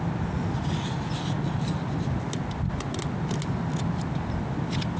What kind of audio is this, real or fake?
real